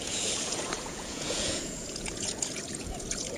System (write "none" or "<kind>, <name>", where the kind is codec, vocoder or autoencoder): vocoder, Vocos